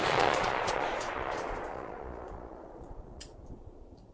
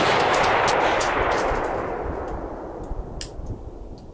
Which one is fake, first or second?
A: first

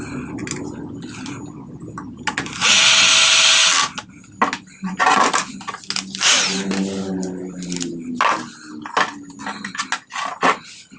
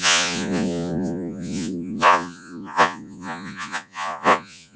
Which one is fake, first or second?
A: second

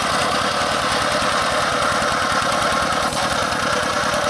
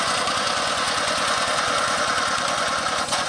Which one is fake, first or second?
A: second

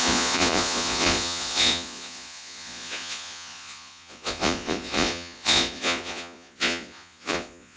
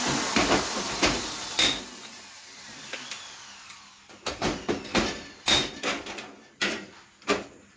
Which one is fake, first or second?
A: first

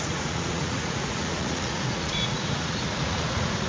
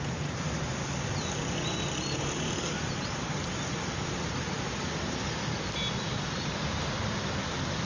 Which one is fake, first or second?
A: first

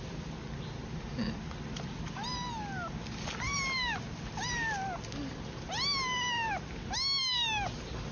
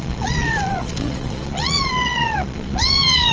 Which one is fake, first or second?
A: second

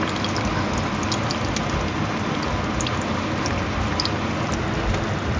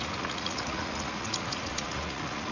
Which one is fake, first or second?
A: second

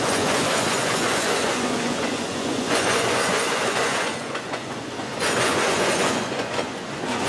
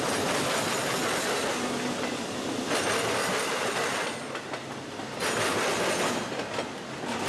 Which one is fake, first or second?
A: first